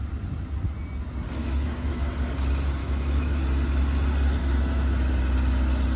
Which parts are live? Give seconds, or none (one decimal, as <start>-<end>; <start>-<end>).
0.0-1.4; 2.1-2.8; 3.4-4.4; 5.1-6.0